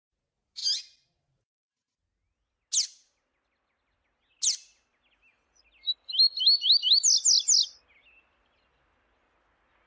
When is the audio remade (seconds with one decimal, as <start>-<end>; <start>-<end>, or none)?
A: none